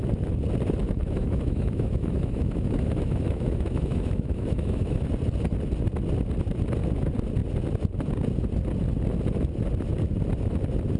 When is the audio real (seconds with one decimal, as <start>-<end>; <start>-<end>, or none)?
0.0-0.8; 5.0-11.0